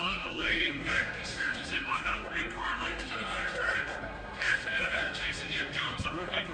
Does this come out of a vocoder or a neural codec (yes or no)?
yes